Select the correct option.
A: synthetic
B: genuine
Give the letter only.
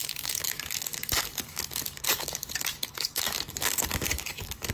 A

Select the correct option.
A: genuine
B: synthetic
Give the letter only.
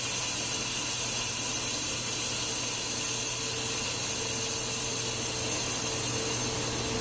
A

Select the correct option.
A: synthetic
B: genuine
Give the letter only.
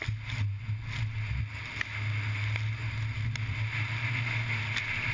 B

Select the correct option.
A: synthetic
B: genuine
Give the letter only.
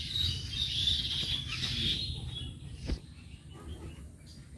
B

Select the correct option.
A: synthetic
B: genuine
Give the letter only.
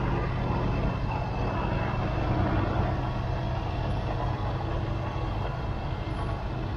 B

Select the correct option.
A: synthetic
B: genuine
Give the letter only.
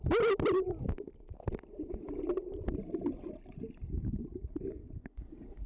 B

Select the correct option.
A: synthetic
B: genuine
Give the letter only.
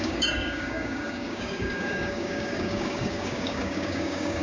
A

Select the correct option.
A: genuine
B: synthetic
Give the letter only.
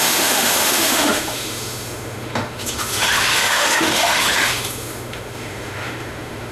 B